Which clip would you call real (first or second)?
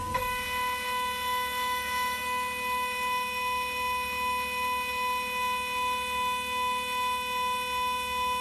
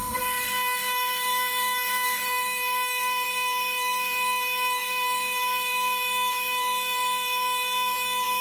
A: first